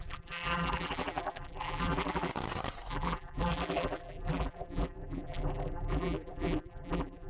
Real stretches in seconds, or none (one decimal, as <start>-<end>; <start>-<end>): 2.3-2.9